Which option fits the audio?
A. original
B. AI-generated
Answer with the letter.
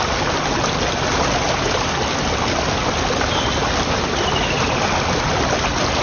A